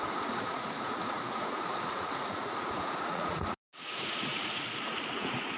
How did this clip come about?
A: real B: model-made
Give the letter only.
B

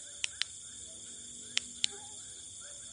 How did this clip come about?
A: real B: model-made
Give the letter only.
A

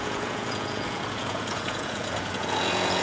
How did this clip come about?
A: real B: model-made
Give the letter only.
B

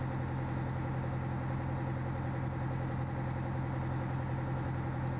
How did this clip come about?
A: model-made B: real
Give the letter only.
B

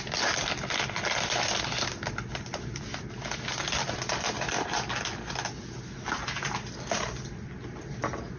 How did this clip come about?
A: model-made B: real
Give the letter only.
B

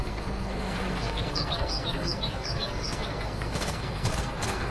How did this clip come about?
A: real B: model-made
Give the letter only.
B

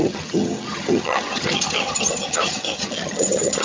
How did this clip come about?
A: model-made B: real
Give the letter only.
A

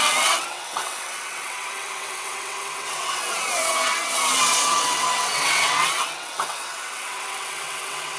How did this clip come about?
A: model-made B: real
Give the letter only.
A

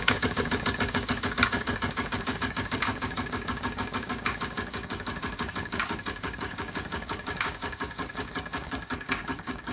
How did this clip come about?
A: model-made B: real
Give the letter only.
A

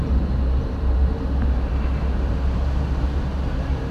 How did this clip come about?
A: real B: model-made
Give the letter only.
B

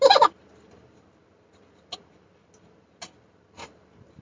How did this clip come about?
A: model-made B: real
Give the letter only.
B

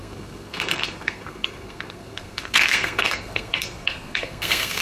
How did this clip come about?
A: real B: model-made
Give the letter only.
B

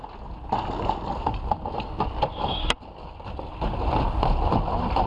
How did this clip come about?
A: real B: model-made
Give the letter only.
A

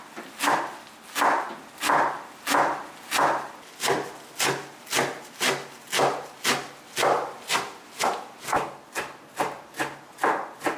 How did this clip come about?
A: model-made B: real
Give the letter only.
B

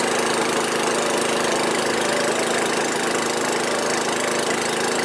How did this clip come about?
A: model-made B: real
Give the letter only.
B